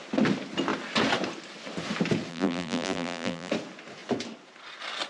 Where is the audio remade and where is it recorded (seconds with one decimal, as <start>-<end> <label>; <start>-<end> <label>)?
0.0-2.3 recorded; 2.3-3.5 remade; 3.5-5.1 recorded